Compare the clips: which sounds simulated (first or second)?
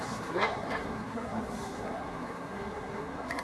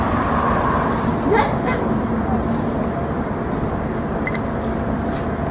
first